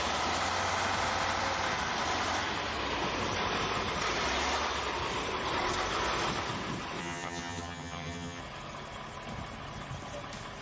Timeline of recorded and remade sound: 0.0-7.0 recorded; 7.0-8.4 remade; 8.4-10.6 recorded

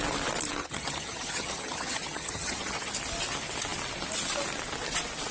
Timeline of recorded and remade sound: 0.0-0.6 recorded; 0.6-2.9 remade; 2.9-5.3 recorded

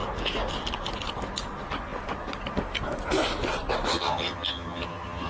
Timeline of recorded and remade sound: 0.0-3.9 recorded; 3.9-5.3 remade

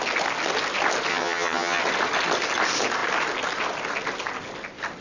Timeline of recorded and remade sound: 0.0-1.1 recorded; 1.1-1.8 remade; 1.8-5.0 recorded

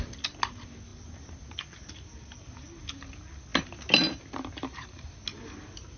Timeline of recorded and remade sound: 0.0-6.0 recorded